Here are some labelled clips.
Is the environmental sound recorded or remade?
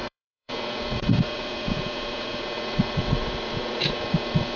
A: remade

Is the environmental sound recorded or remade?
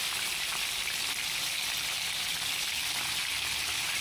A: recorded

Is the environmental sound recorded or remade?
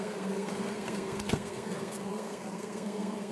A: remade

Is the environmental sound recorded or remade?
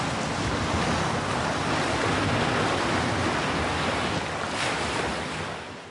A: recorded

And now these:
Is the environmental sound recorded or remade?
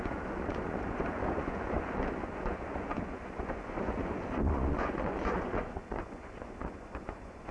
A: remade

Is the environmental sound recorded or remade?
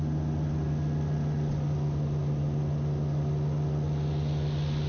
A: recorded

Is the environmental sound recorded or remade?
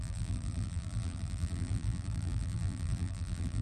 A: remade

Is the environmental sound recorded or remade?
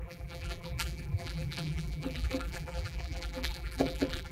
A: remade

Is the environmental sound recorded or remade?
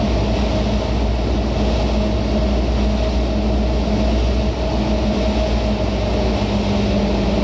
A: recorded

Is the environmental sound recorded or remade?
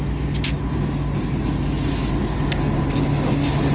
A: recorded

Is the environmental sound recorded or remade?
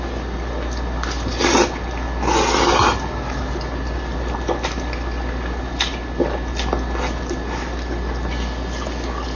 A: recorded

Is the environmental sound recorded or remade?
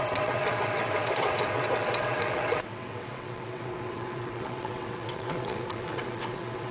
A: remade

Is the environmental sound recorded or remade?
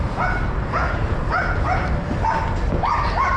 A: recorded